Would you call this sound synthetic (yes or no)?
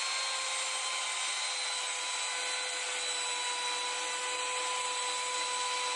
no